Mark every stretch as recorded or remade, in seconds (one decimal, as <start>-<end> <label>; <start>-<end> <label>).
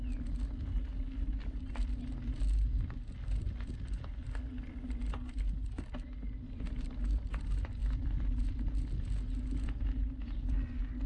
0.0-0.9 recorded; 0.9-1.9 remade; 1.9-7.8 recorded; 7.8-8.6 remade; 8.6-11.1 recorded